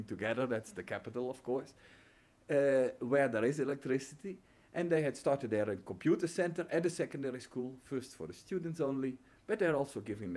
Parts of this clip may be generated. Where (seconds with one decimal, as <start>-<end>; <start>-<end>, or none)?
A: 0.0-10.4